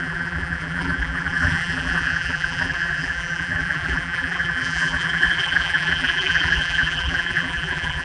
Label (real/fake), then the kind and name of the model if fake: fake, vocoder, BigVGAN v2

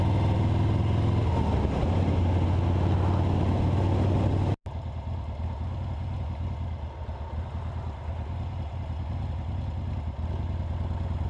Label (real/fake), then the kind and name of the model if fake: real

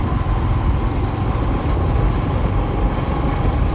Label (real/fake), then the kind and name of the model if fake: real